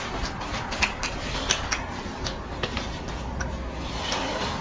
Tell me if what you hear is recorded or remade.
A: remade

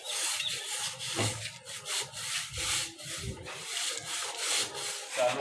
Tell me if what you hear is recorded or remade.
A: recorded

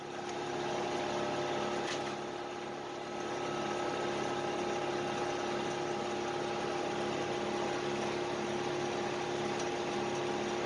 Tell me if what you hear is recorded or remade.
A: recorded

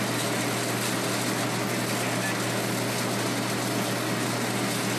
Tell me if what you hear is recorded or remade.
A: recorded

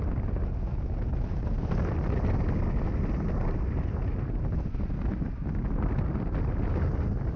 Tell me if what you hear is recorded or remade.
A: recorded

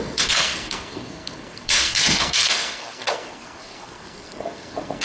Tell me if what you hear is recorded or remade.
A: remade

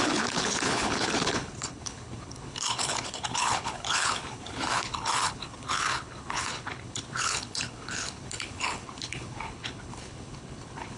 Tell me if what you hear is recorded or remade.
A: remade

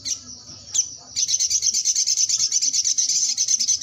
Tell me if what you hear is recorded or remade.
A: recorded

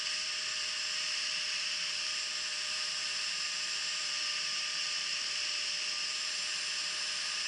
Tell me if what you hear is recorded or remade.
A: remade